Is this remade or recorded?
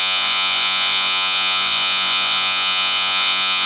remade